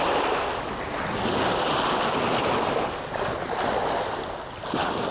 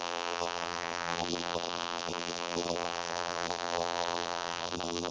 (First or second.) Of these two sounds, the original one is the first